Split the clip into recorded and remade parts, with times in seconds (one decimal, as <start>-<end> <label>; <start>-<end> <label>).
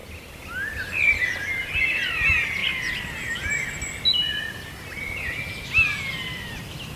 0.0-7.0 recorded